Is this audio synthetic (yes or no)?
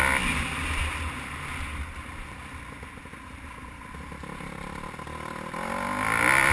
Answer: no